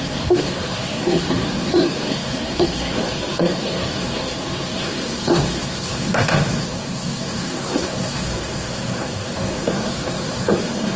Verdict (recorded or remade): remade